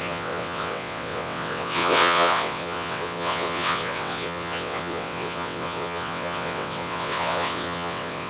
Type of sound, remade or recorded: remade